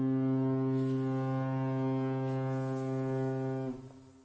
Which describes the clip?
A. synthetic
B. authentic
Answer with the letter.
B